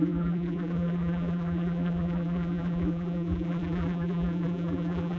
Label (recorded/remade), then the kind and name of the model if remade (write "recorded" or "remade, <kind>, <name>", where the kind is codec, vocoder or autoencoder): remade, vocoder, BigVGAN v2